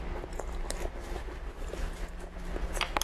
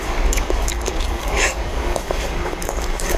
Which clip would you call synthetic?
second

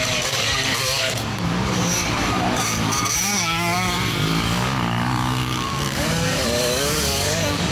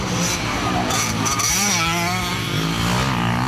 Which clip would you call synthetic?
first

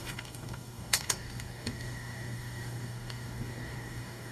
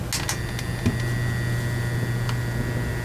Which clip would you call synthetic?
first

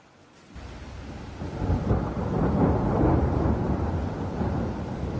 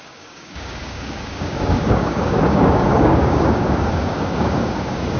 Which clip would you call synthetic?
second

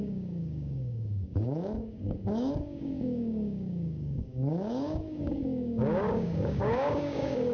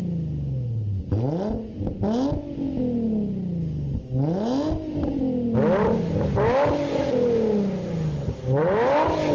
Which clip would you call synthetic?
first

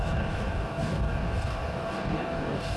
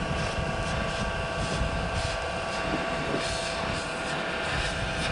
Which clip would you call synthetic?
first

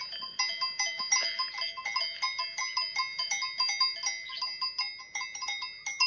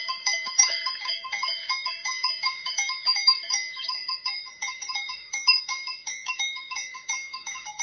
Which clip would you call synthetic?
second